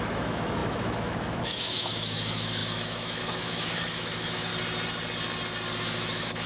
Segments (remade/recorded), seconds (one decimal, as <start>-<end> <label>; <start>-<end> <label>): 0.0-4.5 remade; 4.5-5.8 recorded; 5.8-6.5 remade